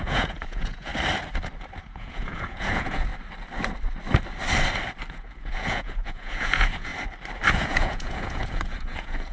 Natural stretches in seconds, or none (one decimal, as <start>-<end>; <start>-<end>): 0.9-1.8; 3.1-5.1; 6.9-7.5